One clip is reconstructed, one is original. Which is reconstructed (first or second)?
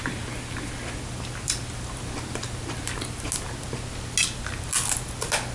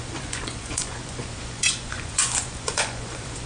second